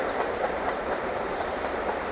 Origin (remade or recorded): remade